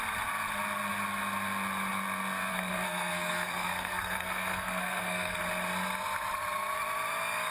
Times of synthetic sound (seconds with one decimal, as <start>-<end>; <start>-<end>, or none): 2.5-5.4